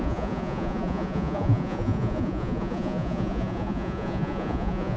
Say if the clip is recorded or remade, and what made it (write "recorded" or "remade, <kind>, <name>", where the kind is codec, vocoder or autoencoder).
remade, vocoder, Vocos